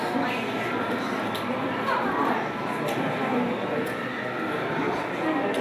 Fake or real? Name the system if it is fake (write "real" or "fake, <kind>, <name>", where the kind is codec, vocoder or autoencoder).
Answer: real